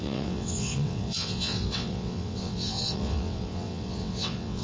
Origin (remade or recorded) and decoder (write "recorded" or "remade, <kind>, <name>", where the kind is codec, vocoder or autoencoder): remade, vocoder, WaveNeXt